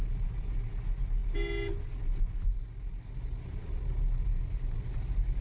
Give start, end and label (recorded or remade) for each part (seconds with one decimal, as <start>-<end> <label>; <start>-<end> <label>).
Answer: 0.0-5.4 recorded